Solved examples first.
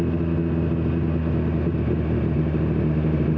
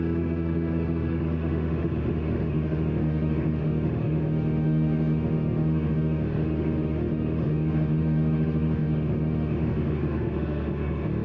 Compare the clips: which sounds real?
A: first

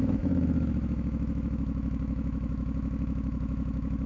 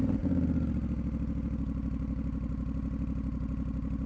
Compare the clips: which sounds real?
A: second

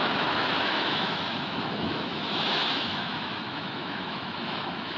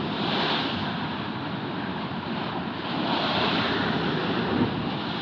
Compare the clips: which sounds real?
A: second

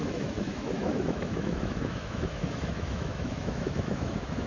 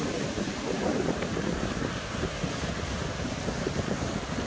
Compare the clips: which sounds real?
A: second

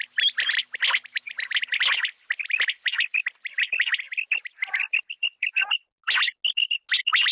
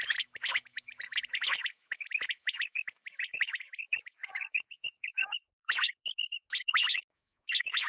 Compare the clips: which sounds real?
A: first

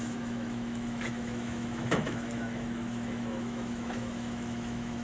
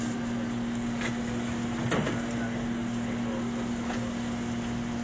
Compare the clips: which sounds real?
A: second